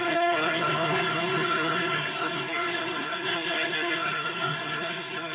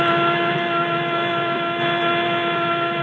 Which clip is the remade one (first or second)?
first